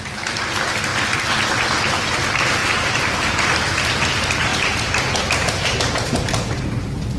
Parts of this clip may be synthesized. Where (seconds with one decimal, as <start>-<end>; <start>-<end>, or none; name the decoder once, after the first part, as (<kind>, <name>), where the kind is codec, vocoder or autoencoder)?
2.6-3.9 (vocoder, BigVGAN v2)